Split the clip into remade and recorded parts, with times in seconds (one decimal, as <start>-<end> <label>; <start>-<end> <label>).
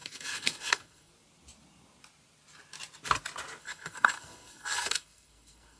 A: 0.0-1.1 remade; 1.1-3.6 recorded; 3.6-5.8 remade